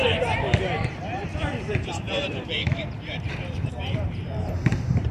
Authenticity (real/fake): fake